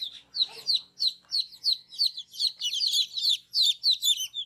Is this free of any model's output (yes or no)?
yes